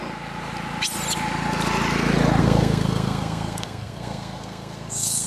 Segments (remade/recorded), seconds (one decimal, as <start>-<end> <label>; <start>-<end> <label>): 0.0-2.4 recorded; 2.4-5.3 remade